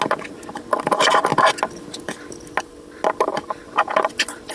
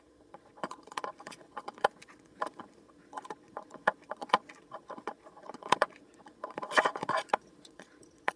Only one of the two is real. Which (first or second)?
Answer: first